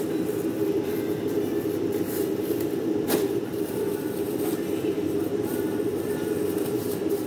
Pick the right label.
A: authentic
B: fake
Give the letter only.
B